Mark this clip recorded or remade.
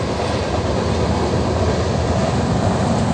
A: recorded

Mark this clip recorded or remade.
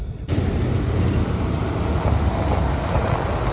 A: recorded